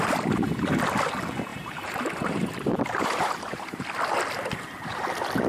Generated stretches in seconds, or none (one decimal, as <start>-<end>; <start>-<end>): 1.5-3.8